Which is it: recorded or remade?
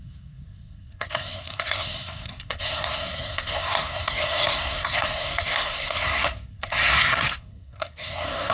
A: remade